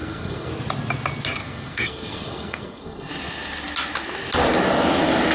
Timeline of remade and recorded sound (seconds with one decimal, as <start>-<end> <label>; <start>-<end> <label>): 0.0-0.5 remade; 0.5-1.4 recorded; 1.4-3.1 remade; 3.1-5.3 recorded